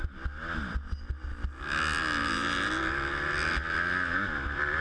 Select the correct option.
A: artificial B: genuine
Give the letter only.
B